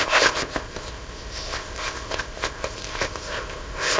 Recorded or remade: remade